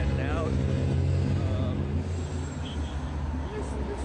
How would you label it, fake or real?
real